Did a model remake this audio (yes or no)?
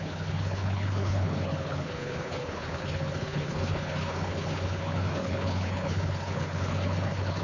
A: yes